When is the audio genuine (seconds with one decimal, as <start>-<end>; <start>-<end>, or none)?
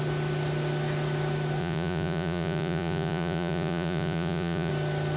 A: 0.0-1.6; 4.7-5.2